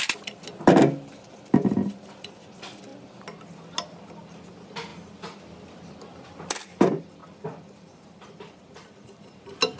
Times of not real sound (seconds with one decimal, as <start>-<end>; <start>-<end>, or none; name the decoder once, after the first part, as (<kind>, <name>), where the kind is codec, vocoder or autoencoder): none